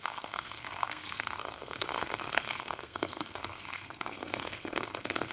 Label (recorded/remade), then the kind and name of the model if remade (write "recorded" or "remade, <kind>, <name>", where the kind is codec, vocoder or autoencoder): remade, codec, SNAC